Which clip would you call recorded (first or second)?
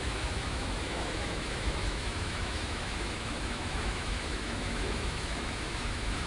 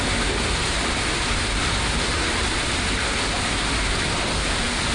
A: second